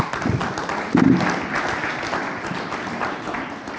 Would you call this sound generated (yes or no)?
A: no